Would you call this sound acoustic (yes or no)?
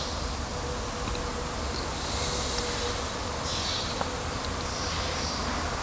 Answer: yes